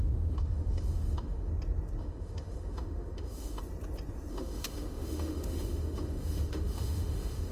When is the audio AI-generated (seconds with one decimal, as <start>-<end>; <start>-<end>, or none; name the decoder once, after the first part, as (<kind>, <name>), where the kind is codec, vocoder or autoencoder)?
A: 0.0-1.5 (autoencoder, DAC-VAE); 2.0-3.6; 4.3-7.5